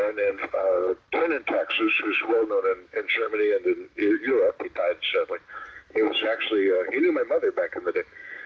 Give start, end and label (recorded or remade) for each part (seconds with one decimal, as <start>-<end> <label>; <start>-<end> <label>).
0.0-0.4 remade; 0.4-1.5 recorded; 1.5-4.3 remade; 4.3-5.5 recorded; 5.5-8.5 remade